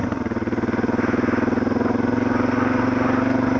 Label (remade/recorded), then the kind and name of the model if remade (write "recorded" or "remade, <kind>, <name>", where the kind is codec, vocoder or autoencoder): recorded